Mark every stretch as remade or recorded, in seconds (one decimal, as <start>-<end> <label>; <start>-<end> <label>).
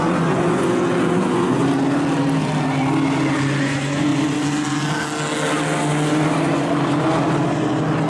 0.0-1.6 remade; 1.6-3.6 recorded; 3.6-4.1 remade; 4.1-8.1 recorded